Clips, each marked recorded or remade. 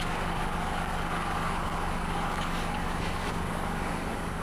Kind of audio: remade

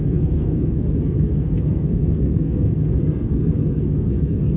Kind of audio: remade